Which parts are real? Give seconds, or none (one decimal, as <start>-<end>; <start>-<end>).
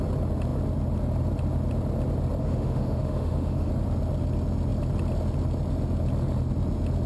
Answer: 0.0-2.4; 3.7-7.1